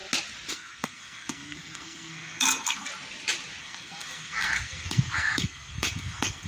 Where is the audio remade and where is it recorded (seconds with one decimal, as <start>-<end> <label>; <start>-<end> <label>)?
0.0-0.5 recorded; 0.5-2.9 remade; 2.9-3.6 recorded; 3.6-6.5 remade